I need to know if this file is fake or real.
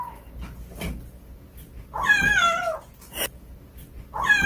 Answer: real